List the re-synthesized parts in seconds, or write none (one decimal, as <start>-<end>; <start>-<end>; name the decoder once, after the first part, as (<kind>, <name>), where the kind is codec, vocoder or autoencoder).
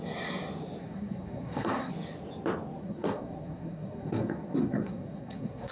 0.8-1.9 (codec, SNAC); 2.8-5.7